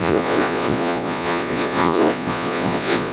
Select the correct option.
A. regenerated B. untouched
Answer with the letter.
A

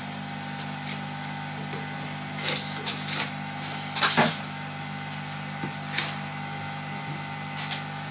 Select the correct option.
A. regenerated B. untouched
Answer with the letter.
B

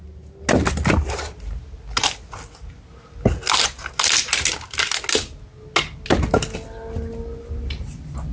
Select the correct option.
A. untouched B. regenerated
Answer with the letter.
A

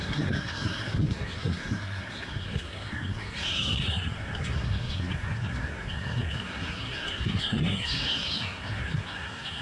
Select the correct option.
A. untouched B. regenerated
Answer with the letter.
B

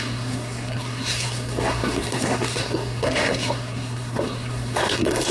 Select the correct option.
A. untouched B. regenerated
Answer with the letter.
B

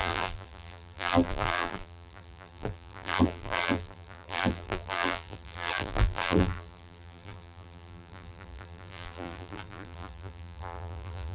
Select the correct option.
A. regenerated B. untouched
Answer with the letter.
A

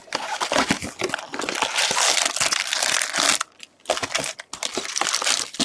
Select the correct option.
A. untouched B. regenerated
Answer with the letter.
A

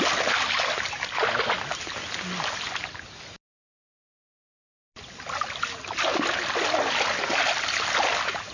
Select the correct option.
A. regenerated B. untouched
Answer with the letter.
B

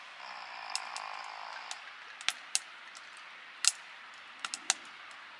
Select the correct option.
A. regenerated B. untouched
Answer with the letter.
B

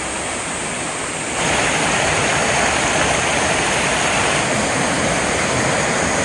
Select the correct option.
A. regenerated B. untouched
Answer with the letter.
B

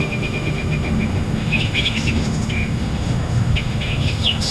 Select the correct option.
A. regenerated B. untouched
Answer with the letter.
A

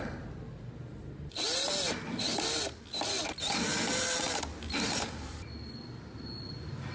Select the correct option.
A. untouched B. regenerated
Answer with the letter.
A